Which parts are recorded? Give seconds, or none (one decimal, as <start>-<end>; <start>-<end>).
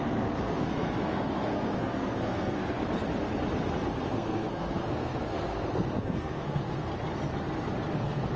2.8-4.1; 6.9-7.9